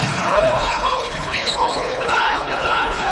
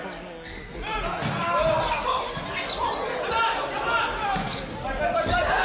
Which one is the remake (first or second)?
first